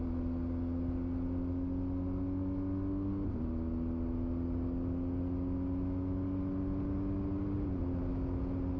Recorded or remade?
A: recorded